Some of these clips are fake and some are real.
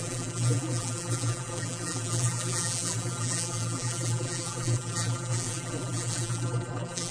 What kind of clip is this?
fake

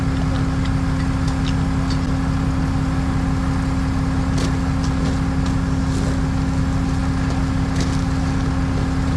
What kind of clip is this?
real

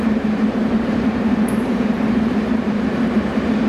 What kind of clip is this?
fake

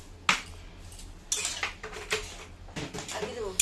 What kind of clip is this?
real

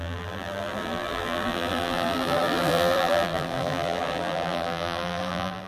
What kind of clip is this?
fake